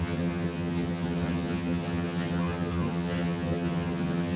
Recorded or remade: remade